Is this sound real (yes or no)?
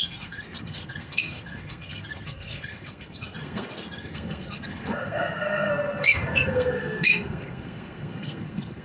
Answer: no